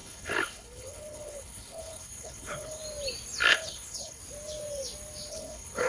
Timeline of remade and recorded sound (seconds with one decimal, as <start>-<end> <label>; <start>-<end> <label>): 0.0-2.8 remade; 2.8-3.5 recorded; 3.5-4.2 remade; 4.2-5.3 recorded; 5.3-5.9 remade